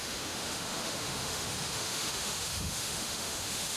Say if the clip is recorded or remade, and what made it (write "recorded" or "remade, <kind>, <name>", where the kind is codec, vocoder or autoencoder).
remade, autoencoder, DAC-VAE